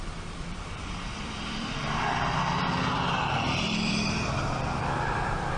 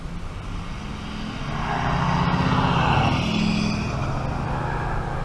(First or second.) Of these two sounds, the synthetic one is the first